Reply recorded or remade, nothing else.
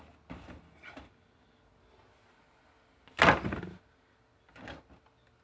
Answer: recorded